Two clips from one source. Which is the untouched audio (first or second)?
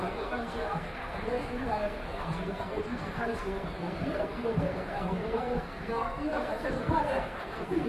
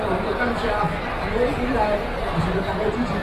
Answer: second